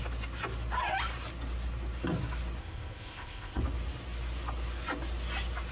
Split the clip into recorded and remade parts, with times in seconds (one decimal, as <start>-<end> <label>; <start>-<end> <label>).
0.0-2.6 recorded; 2.6-3.6 remade; 3.6-5.7 recorded